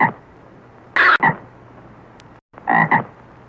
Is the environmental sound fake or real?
real